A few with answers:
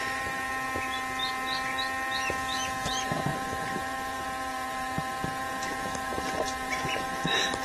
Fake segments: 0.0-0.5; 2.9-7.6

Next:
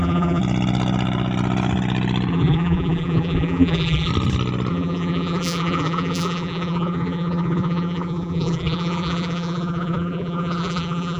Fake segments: 0.0-0.4; 2.3-4.1; 4.7-11.2

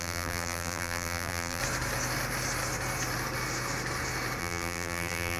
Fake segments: 0.0-1.6; 4.4-5.4

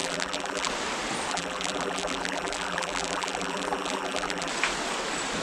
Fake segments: 0.0-0.7; 1.3-4.5

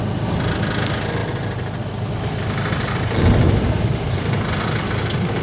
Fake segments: 1.2-4.4